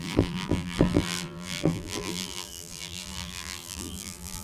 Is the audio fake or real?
fake